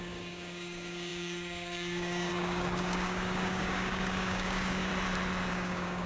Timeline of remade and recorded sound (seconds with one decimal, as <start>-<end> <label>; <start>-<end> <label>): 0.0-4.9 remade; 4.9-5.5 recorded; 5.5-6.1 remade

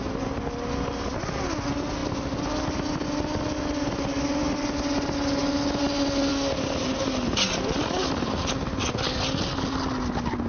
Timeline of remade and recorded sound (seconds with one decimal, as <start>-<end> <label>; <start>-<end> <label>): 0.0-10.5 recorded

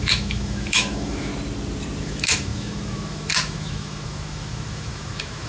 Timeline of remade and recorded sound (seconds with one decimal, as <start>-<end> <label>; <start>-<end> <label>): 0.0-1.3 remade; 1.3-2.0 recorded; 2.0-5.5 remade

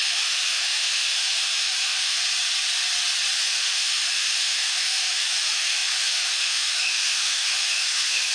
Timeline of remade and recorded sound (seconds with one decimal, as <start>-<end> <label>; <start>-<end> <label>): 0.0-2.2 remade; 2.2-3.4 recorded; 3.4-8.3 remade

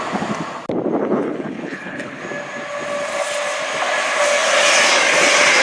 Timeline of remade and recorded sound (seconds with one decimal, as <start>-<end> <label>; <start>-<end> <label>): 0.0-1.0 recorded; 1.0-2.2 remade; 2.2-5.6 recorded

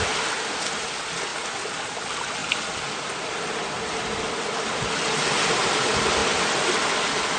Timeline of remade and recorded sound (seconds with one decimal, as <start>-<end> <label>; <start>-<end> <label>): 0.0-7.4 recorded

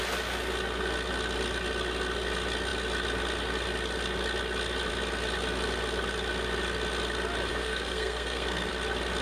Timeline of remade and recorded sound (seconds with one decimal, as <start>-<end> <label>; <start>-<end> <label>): 0.0-7.5 recorded; 7.5-8.7 remade; 8.7-9.2 recorded